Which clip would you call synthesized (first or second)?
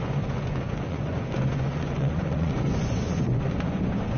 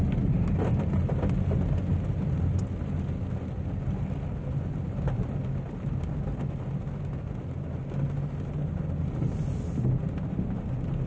first